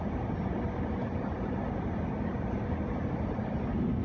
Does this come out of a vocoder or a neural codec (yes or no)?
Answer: no